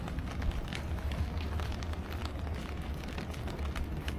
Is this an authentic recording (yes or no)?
yes